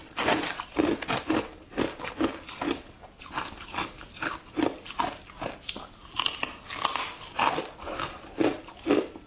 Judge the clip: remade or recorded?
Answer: recorded